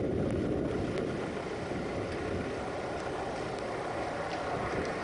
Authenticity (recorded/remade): recorded